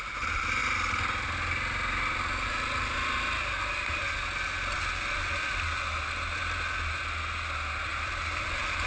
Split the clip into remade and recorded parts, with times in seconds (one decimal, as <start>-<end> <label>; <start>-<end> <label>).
0.0-7.9 recorded; 7.9-8.9 remade